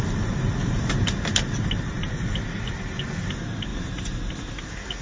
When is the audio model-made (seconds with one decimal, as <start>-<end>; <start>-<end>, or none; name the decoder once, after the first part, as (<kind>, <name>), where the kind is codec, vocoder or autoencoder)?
0.6-3.3 (vocoder, BigVGAN v2); 3.7-4.3